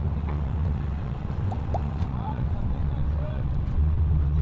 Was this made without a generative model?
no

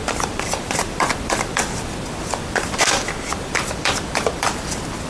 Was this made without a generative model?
no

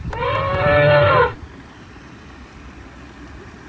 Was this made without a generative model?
yes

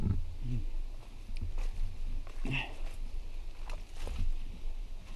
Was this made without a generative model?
yes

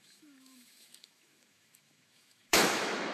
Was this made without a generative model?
no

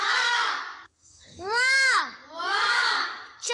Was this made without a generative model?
no